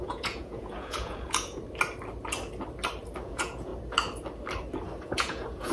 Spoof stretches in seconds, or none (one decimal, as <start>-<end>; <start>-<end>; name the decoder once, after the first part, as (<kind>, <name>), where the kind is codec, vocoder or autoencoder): 0.0-1.6 (vocoder, Vocos); 3.2-3.7; 5.0-5.7